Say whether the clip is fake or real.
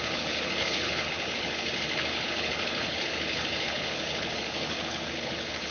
fake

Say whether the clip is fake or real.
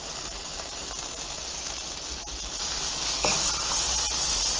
real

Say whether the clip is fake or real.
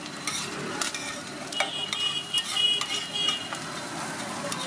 real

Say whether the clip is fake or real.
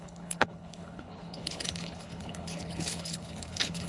fake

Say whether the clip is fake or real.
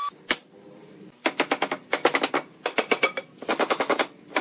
real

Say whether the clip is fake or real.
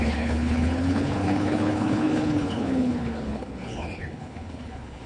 fake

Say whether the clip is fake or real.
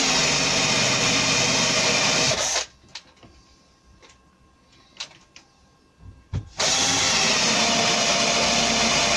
real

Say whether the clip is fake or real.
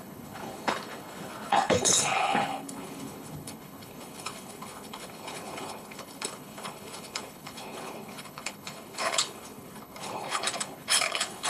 fake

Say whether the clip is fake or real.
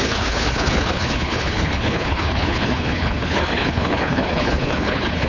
fake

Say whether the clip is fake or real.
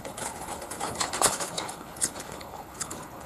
fake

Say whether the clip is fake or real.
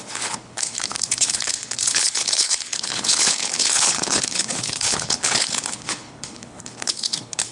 fake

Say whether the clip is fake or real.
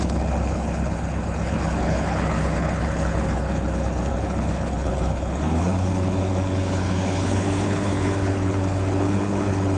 fake